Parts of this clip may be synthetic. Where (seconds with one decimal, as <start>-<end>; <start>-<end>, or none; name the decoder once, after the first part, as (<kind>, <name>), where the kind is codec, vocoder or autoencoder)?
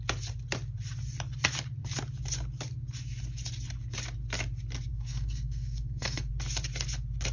4.9-6.3 (codec, SNAC)